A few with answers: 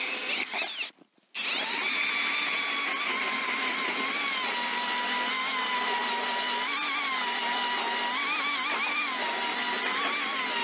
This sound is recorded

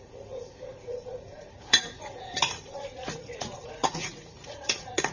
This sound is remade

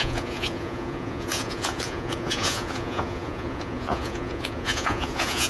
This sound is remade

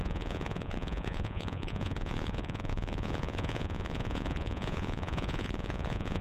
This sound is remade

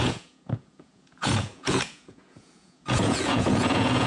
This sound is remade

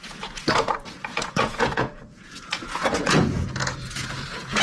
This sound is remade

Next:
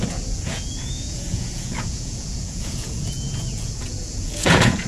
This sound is remade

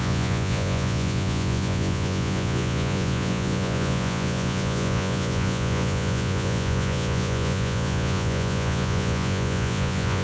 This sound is remade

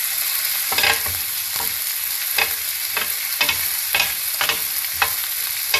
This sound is recorded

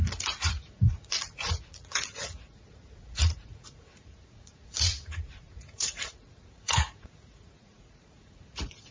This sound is remade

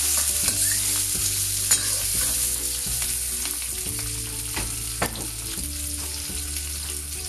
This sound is recorded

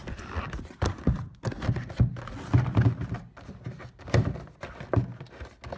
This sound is recorded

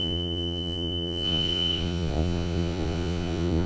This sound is remade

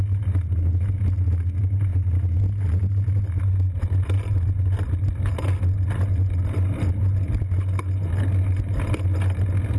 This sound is recorded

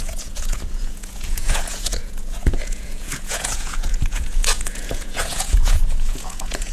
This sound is remade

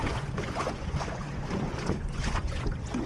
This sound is remade